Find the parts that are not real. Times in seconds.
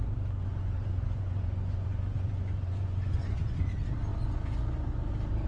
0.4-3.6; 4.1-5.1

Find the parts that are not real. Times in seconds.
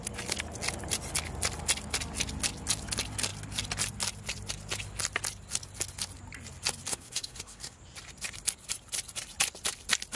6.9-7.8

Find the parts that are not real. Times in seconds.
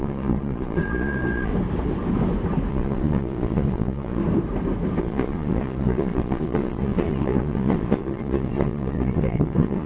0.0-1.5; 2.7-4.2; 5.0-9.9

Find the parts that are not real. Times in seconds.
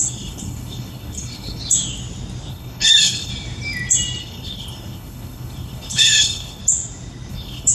0.0-1.6; 2.5-3.3; 4.2-6.6; 7.3-7.7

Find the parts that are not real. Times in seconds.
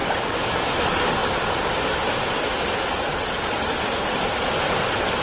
none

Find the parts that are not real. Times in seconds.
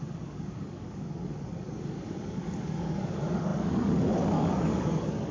0.0-5.3